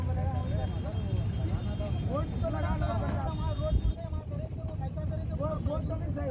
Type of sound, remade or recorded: recorded